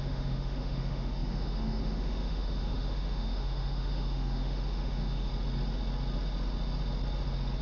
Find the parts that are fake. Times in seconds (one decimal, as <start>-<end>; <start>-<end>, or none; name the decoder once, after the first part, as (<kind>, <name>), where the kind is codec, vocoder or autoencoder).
0.0-5.3 (autoencoder, DAC-VAE)